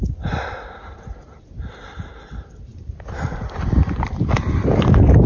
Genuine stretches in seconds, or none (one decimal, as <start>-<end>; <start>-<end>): none

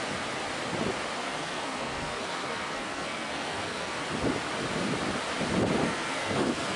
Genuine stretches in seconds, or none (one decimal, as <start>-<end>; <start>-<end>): 0.0-1.2; 4.0-5.8

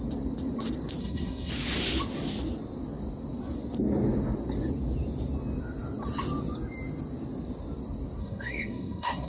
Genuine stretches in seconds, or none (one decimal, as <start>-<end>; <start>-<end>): 0.0-1.0; 1.5-8.2

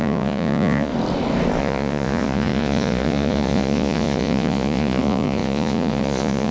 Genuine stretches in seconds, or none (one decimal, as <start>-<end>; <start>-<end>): 0.9-1.6

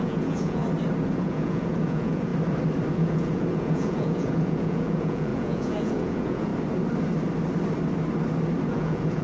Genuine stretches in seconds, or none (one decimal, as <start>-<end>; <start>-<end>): 0.6-1.1; 2.3-2.9; 6.5-8.7

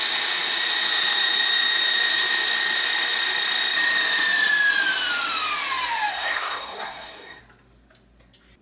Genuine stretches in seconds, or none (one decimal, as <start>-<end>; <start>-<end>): 0.0-6.1; 7.4-8.6